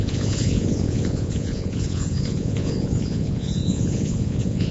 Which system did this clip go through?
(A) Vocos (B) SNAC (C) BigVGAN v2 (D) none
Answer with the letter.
A